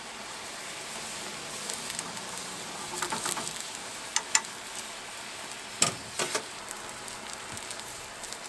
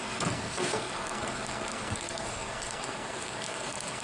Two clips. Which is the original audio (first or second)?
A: first